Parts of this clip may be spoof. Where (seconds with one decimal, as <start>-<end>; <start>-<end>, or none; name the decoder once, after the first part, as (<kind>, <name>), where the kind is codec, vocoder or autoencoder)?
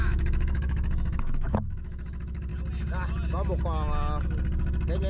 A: 0.0-2.5 (autoencoder, DAC-VAE)